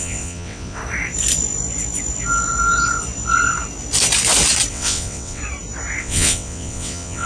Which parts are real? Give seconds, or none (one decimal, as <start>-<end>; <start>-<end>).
0.8-4.7; 5.4-6.0